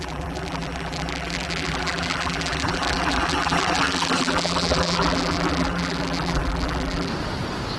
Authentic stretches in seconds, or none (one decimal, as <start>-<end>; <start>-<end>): 7.1-7.8